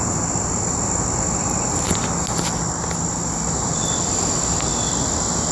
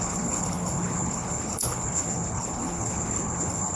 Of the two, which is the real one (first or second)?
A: first